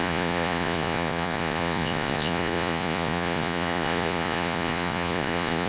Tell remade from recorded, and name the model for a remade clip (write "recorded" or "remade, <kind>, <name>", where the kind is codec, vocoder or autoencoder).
remade, vocoder, Vocos